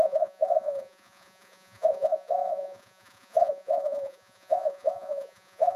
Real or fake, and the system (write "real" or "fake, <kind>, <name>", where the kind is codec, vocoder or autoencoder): fake, vocoder, Vocos